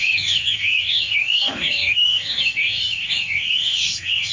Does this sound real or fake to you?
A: fake